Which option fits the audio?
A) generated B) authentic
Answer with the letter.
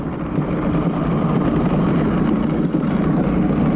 B